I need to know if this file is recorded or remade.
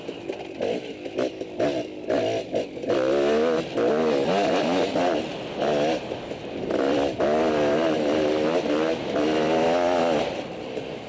recorded